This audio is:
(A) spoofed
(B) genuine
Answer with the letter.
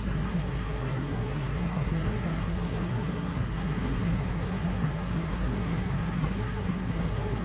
A